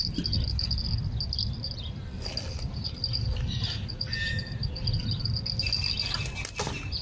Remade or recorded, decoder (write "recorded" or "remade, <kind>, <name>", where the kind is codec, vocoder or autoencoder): recorded